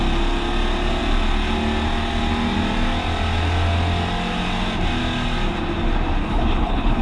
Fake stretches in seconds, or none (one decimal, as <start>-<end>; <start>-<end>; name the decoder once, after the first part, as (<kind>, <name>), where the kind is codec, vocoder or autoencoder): 6.2-7.0 (codec, HILCodec)